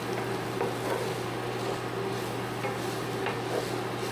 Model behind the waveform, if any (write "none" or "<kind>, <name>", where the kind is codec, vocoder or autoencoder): none